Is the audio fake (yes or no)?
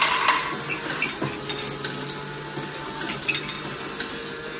no